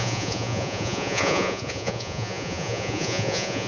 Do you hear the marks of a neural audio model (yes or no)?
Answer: yes